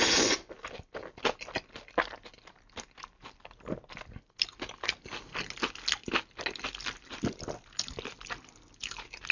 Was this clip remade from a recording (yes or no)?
no